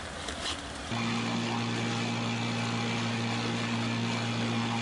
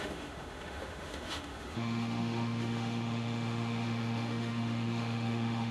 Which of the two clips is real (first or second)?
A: first